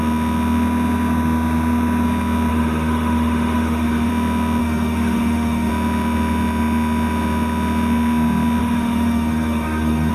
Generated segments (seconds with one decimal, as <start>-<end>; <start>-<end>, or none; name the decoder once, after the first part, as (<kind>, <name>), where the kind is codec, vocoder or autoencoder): 2.5-4.1 (autoencoder, DAC-VAE); 4.6-5.7; 8.6-10.1